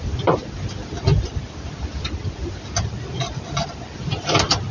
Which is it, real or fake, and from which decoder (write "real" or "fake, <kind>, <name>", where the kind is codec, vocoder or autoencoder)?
real